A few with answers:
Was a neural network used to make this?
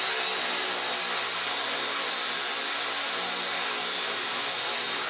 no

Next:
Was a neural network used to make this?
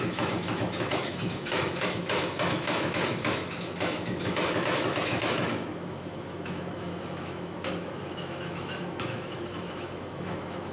yes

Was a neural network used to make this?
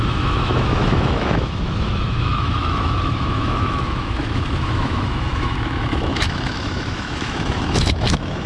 yes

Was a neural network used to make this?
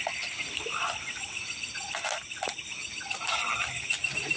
no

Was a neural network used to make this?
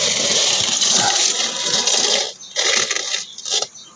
no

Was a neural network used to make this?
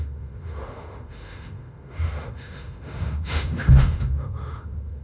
yes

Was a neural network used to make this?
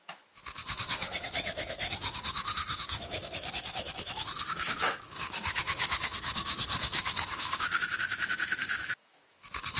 yes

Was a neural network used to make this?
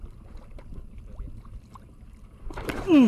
no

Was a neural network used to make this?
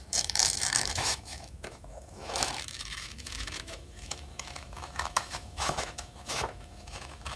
yes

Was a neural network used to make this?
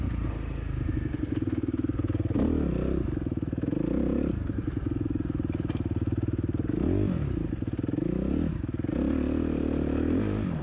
no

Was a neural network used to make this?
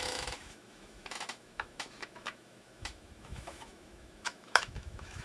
yes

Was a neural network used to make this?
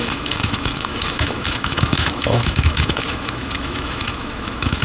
yes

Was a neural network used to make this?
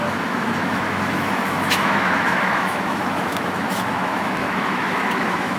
yes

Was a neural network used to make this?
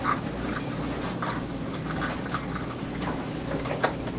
no